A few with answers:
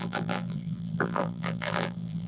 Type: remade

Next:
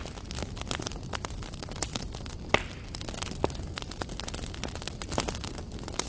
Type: recorded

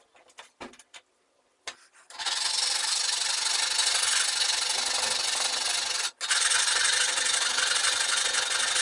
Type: recorded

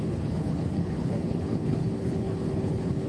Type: remade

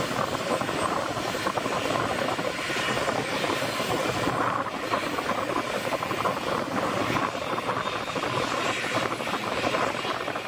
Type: recorded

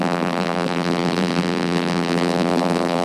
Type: remade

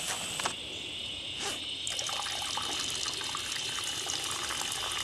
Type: recorded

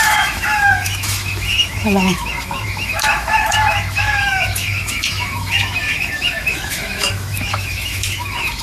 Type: remade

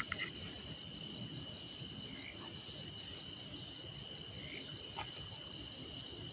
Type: recorded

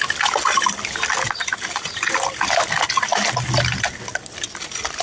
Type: recorded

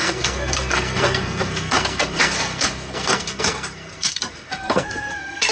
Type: remade